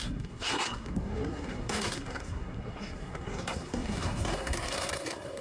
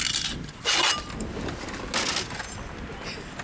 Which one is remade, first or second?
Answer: first